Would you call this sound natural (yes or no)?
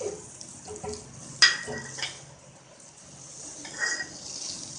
yes